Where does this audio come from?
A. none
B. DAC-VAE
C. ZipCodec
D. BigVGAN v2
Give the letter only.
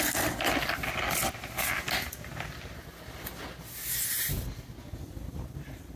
A